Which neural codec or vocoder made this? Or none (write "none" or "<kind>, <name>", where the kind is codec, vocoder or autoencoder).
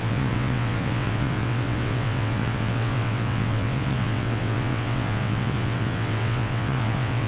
vocoder, WaveNeXt